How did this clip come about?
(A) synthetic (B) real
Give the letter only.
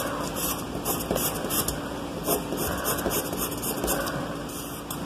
B